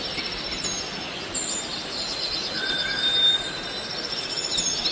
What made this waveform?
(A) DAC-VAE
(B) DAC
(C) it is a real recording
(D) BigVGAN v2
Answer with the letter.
C